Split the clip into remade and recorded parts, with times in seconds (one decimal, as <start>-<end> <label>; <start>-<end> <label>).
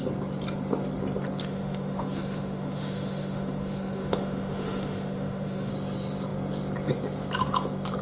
0.0-1.4 recorded; 1.4-5.7 remade; 5.7-8.0 recorded